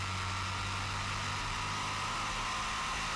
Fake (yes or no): no